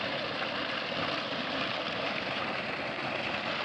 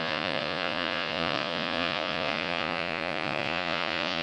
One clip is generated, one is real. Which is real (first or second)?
first